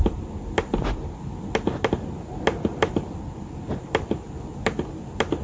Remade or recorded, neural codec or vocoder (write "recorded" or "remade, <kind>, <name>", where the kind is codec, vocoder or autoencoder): recorded